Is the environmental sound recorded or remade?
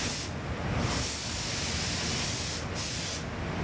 recorded